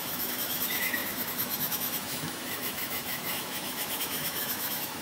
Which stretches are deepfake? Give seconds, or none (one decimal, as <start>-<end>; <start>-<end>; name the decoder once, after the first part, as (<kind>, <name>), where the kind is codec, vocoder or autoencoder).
0.0-5.0 (autoencoder, DAC-VAE)